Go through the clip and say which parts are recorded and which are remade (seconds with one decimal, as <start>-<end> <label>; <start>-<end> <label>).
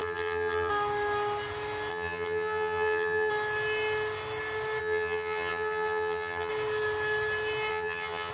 0.0-0.7 remade; 0.7-1.9 recorded; 1.9-3.3 remade; 3.3-4.8 recorded; 4.8-6.5 remade; 6.5-7.7 recorded; 7.7-8.3 remade